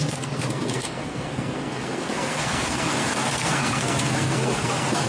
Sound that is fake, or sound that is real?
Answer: fake